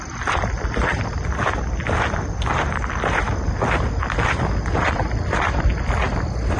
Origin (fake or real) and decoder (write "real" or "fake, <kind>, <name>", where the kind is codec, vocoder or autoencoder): real